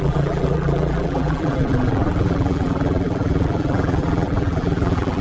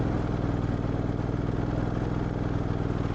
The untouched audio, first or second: second